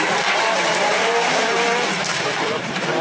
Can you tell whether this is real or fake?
fake